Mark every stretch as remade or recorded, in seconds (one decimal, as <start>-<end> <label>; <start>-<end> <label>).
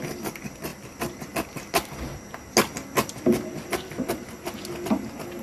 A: 0.0-5.4 recorded